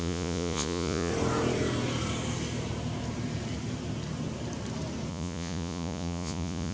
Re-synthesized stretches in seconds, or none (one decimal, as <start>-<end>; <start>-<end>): 0.0-1.1; 5.1-6.7